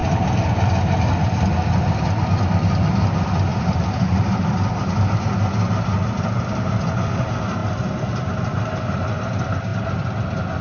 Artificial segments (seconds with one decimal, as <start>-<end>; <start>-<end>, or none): 0.0-0.7